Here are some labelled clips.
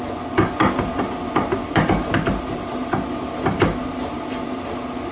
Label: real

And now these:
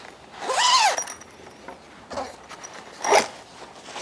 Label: real